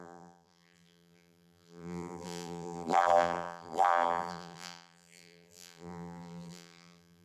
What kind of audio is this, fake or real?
fake